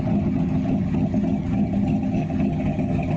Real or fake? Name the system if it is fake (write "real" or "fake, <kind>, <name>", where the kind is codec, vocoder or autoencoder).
fake, vocoder, HiFi-GAN